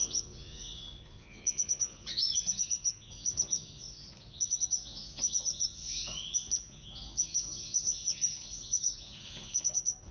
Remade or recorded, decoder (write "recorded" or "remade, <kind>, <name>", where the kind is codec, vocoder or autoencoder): remade, vocoder, Vocos